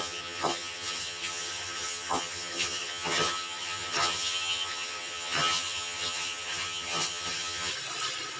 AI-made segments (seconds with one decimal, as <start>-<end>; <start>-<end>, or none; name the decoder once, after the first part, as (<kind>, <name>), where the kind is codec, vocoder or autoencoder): 0.0-7.7 (vocoder, HiFi-GAN)